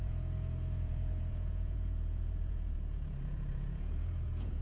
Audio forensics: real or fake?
fake